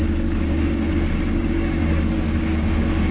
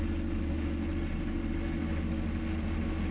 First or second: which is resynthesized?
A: first